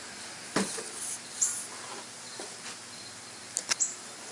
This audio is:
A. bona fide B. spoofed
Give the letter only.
A